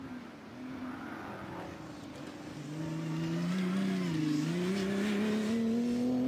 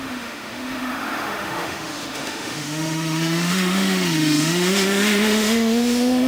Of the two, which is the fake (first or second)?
second